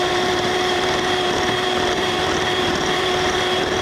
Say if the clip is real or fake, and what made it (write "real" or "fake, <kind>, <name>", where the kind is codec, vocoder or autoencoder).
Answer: fake, vocoder, BigVGAN v2